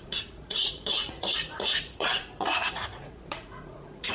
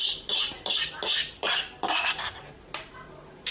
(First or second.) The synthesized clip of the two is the first